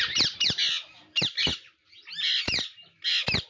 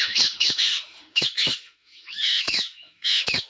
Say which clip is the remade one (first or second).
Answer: second